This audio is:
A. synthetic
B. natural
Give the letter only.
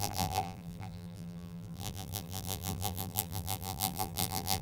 A